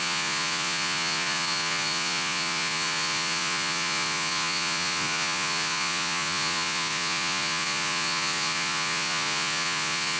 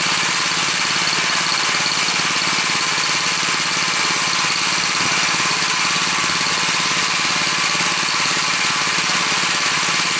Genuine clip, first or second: second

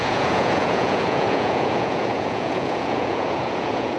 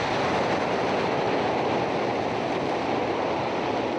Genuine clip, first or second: second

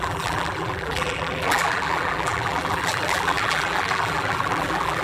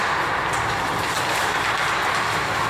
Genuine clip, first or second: second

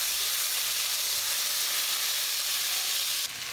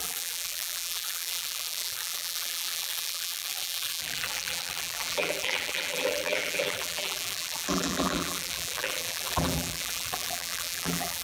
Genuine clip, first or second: first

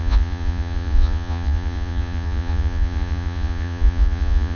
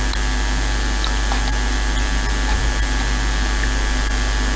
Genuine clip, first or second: second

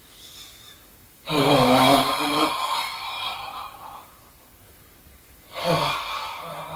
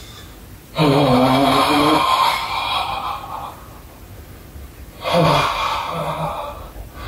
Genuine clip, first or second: second